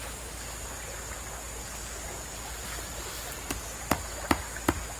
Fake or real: real